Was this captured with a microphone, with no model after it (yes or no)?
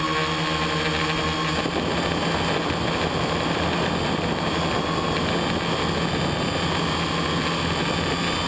yes